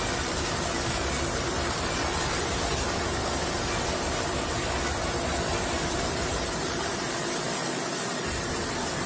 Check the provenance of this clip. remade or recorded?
recorded